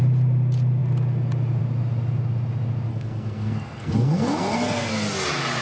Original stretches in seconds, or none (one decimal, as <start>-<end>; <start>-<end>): 0.0-2.9; 4.9-5.6